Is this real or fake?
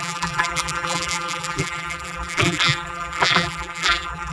fake